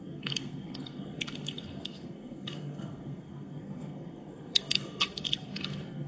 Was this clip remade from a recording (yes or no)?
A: yes